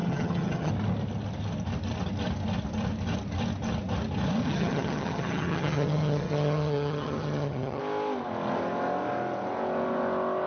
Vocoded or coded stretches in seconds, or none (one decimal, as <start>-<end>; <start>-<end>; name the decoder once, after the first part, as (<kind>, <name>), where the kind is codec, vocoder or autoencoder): 0.0-0.7 (vocoder, HiFi-GAN); 4.4-7.8